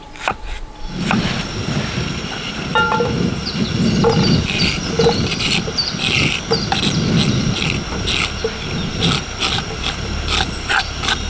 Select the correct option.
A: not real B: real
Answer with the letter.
B